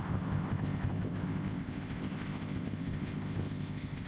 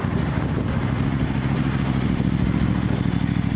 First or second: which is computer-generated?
first